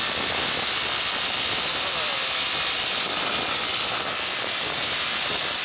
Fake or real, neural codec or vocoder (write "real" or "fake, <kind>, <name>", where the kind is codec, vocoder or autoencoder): real